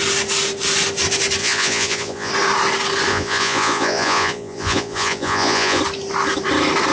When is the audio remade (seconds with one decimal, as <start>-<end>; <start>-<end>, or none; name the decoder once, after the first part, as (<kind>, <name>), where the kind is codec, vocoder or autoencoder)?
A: 1.4-2.3 (vocoder, Vocos); 3.1-5.8